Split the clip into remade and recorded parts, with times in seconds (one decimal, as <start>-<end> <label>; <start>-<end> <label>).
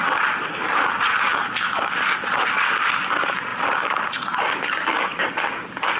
0.0-6.0 recorded